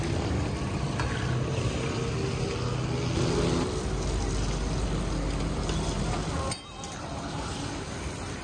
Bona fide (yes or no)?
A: yes